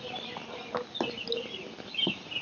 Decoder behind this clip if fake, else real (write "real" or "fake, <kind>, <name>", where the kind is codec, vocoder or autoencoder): real